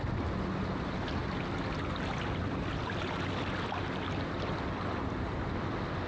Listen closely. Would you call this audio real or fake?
real